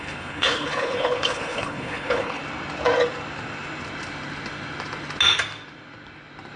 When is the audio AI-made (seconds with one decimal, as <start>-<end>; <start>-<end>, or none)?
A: 0.0-2.4